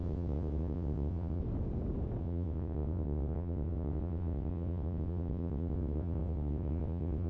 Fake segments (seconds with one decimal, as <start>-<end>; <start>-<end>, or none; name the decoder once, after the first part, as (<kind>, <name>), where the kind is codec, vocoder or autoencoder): 0.0-1.4 (vocoder, WaveNeXt); 2.2-7.3

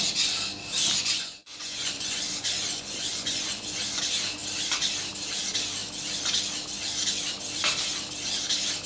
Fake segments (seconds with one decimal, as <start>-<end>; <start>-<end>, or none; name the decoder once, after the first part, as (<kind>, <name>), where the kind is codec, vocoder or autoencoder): 1.0-4.0 (vocoder, Vocos)

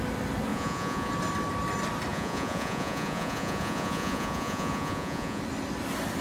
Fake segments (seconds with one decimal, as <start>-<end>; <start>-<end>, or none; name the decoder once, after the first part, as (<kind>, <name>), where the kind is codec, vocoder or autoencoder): 0.5-1.1 (vocoder, Vocos); 2.1-5.4

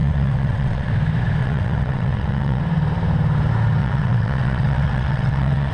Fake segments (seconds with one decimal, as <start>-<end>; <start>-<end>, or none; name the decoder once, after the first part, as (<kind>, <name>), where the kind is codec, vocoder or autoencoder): 0.0-0.9 (vocoder, WaveNeXt); 1.4-2.6; 3.8-5.7